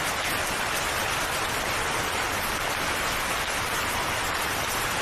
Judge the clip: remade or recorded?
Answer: recorded